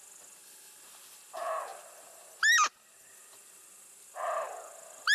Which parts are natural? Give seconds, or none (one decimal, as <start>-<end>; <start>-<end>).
0.0-5.1